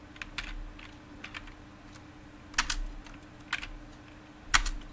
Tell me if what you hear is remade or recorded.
recorded